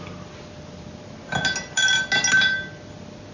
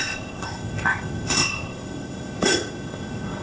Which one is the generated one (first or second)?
second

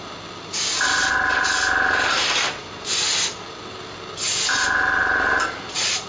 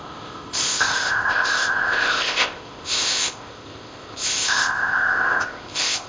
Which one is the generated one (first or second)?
second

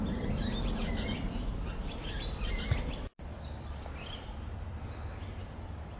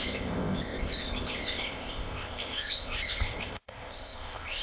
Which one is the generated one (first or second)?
second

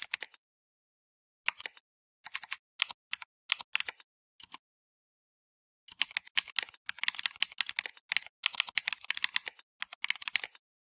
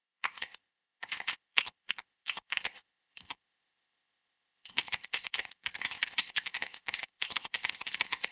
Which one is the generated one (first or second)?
second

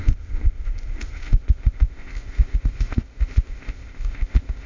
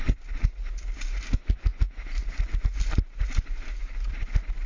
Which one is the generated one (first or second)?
first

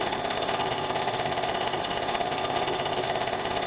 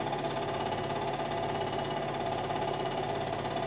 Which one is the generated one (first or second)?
first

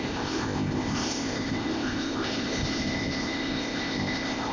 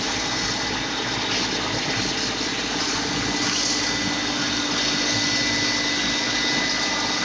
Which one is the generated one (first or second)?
first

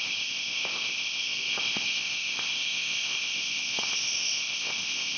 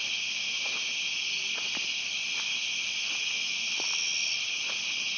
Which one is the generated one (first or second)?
first